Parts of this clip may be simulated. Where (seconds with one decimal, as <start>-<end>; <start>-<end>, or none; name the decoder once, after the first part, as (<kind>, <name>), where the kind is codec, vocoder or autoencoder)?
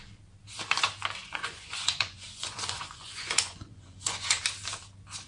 1.2-4.4 (vocoder, Vocos)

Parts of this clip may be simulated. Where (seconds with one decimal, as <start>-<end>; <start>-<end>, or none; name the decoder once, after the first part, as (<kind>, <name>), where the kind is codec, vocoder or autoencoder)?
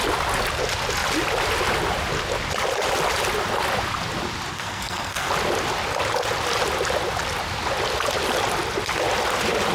4.5-5.3 (codec, SNAC)